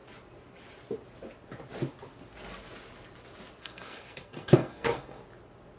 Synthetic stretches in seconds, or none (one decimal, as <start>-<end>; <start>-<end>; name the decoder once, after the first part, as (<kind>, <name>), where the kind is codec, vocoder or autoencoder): 3.6-5.2 (codec, SNAC)